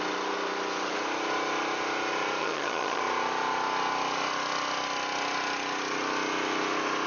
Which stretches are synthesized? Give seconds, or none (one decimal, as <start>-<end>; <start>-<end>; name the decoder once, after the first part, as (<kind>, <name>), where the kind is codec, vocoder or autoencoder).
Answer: 2.4-3.0 (vocoder, HiFi-GAN)